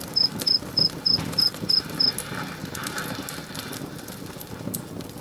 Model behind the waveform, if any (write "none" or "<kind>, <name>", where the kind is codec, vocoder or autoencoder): none